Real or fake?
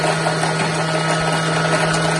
real